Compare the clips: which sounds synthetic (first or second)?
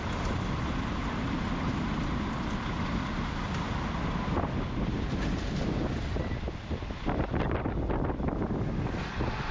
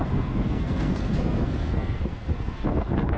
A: second